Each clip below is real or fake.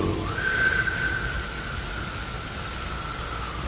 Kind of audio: real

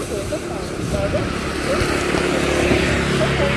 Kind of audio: real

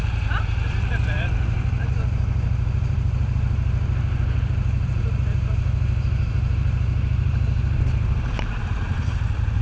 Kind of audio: fake